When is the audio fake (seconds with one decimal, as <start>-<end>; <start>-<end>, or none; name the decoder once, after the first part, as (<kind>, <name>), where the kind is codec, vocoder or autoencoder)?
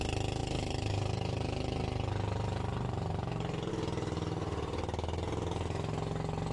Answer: 0.4-3.7 (vocoder, BigVGAN v2)